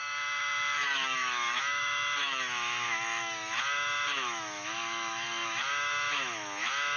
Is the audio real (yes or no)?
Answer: no